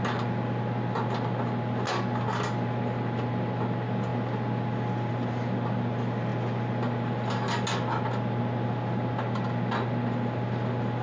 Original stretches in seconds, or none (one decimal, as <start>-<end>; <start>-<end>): 0.0-11.0